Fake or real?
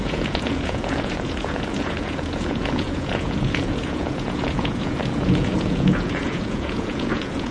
fake